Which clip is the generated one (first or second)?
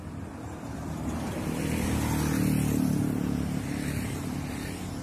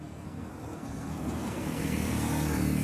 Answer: second